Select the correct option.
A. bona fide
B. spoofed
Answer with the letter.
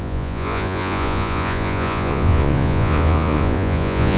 B